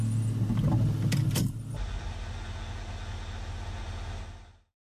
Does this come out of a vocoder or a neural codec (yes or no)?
no